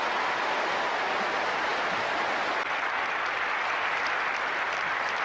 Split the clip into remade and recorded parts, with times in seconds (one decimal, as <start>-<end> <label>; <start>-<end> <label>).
0.0-5.2 recorded